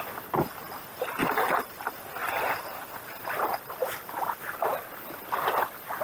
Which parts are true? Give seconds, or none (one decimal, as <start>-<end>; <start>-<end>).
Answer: 0.0-2.2